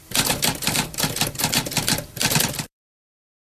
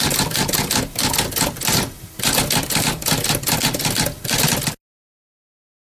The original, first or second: second